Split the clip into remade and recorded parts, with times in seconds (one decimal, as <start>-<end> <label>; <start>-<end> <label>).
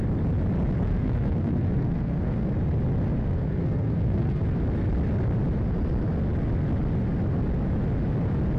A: 0.0-0.8 recorded; 0.8-2.5 remade; 2.5-3.2 recorded; 3.2-4.4 remade; 4.4-8.6 recorded